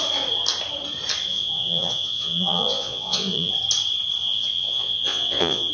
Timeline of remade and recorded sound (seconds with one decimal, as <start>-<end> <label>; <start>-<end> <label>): 0.0-1.3 recorded; 1.3-3.5 remade; 3.5-4.2 recorded; 4.2-5.7 remade